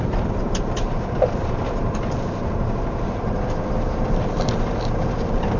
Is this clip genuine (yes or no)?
yes